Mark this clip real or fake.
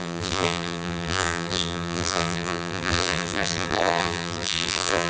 fake